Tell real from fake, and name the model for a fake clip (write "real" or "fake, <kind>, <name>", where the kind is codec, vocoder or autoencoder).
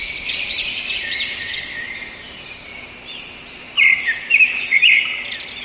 fake, vocoder, BigVGAN v2